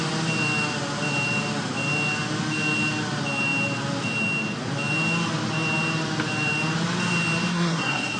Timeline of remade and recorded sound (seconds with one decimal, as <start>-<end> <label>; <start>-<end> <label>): 0.0-7.5 recorded; 7.5-8.2 remade